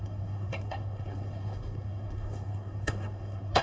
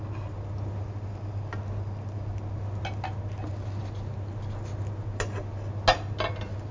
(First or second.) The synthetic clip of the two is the first